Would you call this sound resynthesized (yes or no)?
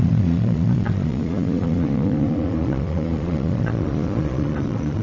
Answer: yes